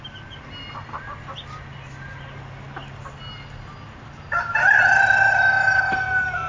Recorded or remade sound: recorded